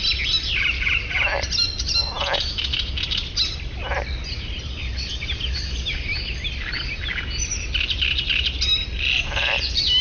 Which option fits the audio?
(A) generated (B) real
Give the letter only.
B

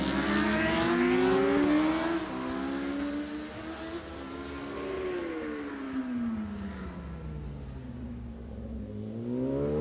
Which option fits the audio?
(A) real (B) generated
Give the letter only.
A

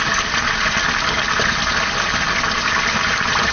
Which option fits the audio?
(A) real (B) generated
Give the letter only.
A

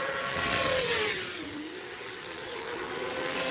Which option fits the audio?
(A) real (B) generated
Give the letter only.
B